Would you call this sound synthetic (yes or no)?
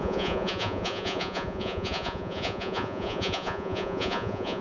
yes